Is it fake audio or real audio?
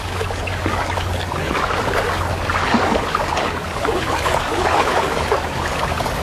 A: fake